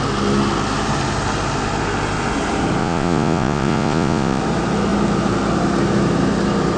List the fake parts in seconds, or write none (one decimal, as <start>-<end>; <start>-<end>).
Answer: 2.8-4.4